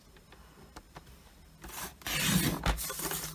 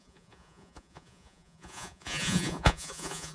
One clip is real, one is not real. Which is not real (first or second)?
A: second